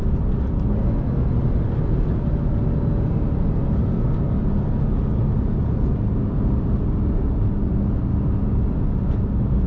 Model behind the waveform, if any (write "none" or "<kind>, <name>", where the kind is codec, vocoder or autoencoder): none